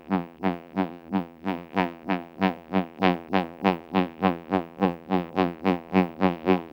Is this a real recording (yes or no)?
no